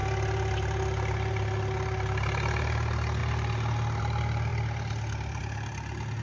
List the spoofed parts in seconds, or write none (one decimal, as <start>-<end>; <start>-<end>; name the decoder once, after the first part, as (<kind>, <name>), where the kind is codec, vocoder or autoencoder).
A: none